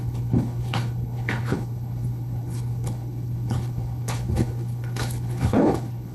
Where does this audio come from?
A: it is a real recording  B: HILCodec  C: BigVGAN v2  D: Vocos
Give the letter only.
B